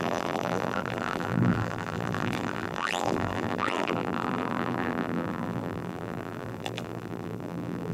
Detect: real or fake fake